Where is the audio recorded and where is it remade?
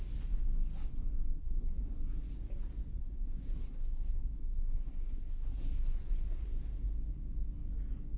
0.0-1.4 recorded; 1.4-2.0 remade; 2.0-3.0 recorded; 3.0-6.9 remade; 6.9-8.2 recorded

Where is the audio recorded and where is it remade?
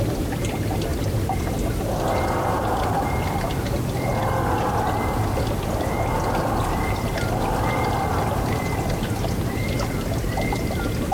0.0-11.1 recorded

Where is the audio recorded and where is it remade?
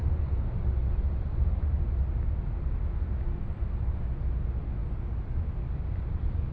0.0-6.5 recorded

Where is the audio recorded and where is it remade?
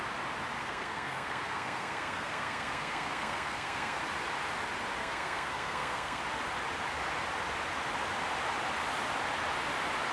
0.0-0.6 recorded; 0.6-4.0 remade; 4.0-5.0 recorded; 5.0-6.2 remade; 6.2-10.1 recorded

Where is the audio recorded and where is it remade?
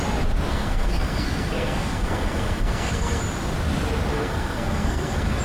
0.0-0.5 recorded; 0.5-3.2 remade; 3.2-4.1 recorded; 4.1-5.4 remade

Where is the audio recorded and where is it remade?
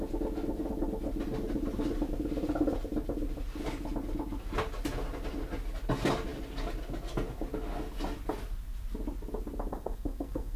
0.0-9.7 recorded; 9.7-10.6 remade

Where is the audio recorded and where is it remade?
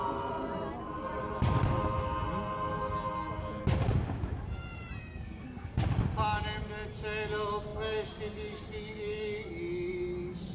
0.0-5.0 recorded; 5.0-5.8 remade; 5.8-10.5 recorded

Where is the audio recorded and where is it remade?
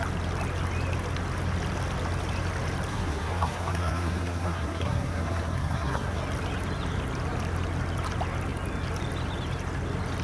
0.0-2.9 recorded; 2.9-6.2 remade; 6.2-10.2 recorded